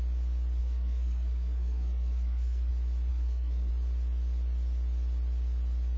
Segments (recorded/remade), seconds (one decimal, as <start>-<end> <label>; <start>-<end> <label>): 0.0-0.6 recorded; 0.6-2.7 remade; 2.7-3.1 recorded; 3.1-3.7 remade; 3.7-6.0 recorded